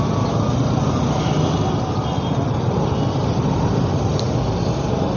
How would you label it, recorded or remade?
recorded